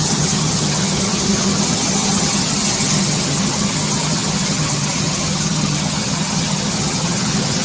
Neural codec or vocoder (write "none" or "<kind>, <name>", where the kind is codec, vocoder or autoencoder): vocoder, HiFi-GAN